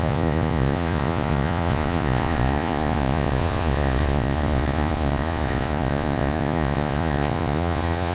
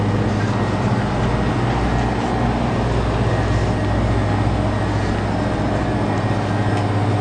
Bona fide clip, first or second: second